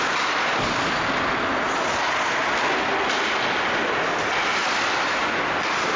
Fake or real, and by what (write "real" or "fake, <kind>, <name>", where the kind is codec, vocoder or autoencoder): real